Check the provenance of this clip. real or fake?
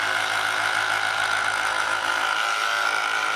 real